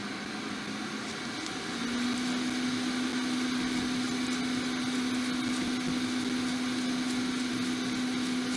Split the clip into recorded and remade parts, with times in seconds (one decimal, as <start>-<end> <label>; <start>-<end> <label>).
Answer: 0.0-1.1 remade; 1.1-8.6 recorded